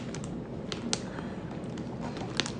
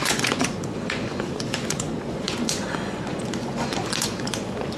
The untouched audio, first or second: first